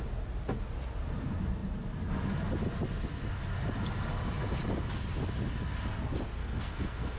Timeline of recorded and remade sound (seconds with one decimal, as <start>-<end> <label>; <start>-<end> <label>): 0.0-6.4 recorded; 6.4-7.2 remade